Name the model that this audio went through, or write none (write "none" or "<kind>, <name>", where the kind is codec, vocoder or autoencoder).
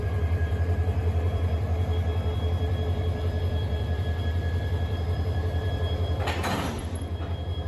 vocoder, BigVGAN v2